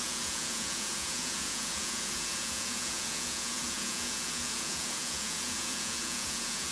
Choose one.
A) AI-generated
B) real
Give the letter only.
A